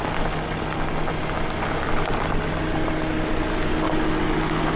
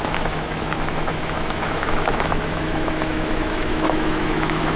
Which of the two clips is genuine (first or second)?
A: first